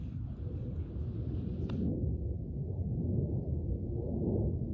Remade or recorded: remade